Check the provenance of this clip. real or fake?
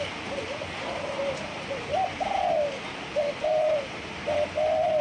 real